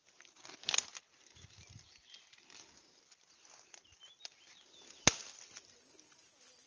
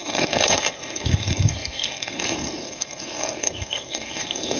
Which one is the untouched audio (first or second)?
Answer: first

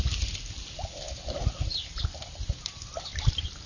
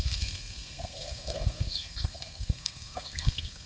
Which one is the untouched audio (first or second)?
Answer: first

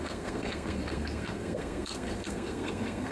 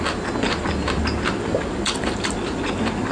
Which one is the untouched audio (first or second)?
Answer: second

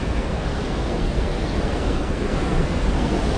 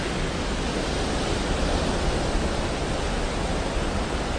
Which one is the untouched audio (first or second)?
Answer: second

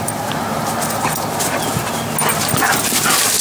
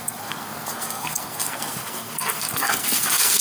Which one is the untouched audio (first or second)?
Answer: first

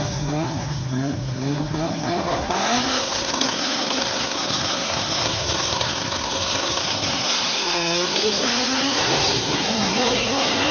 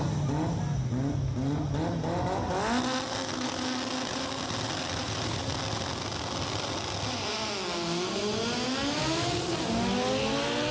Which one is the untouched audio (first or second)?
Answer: second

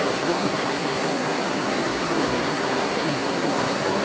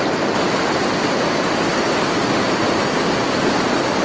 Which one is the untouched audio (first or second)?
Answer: second